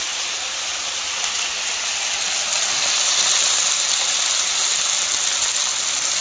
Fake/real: real